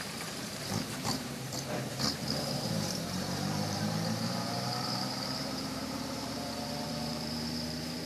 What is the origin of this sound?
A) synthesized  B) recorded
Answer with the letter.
A